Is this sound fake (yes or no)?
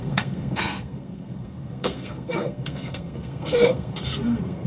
yes